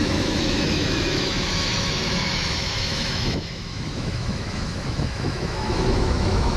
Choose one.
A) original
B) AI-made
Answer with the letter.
B